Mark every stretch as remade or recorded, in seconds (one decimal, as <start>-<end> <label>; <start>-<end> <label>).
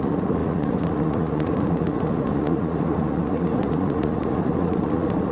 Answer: 0.0-5.3 remade